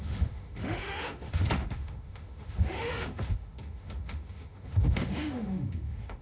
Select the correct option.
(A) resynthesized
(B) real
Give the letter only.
A